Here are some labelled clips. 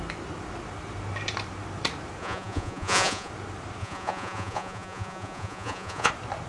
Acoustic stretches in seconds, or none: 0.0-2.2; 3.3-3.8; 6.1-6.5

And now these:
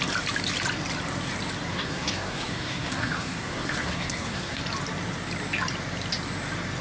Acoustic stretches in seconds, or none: 0.0-1.7; 4.6-6.8

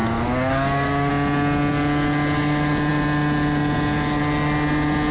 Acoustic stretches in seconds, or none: 1.1-5.1

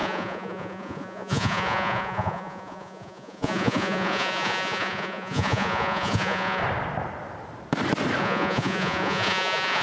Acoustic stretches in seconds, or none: 6.6-8.2

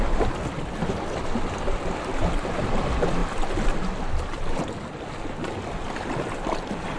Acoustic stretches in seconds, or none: 0.0-7.0